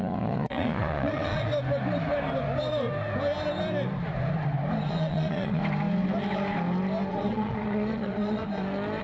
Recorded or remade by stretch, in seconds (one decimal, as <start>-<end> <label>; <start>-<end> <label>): 0.0-1.5 remade; 1.5-4.9 recorded; 4.9-5.6 remade; 5.6-7.1 recorded; 7.1-8.4 remade; 8.4-9.0 recorded